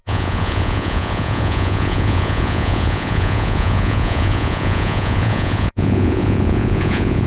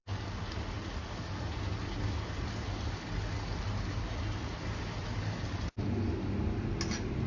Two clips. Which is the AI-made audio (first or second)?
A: first